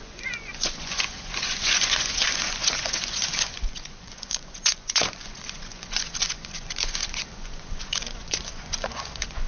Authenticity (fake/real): fake